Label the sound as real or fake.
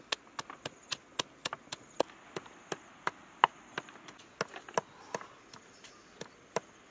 real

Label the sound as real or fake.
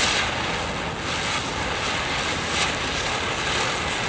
real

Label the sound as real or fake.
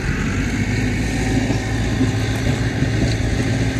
real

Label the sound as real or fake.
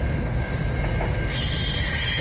real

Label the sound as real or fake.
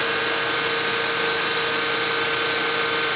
real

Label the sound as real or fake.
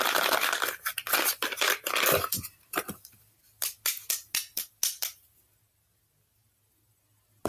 real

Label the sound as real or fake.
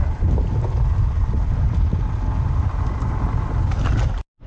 real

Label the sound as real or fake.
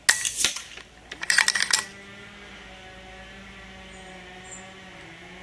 real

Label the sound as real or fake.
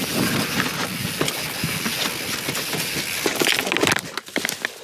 real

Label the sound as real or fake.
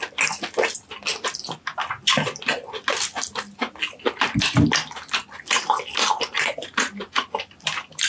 real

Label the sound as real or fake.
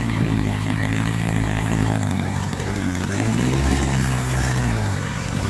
fake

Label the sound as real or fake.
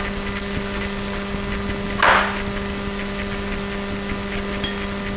real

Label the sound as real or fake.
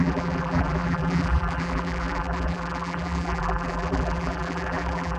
fake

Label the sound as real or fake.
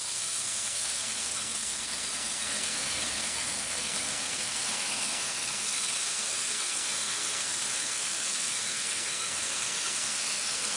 fake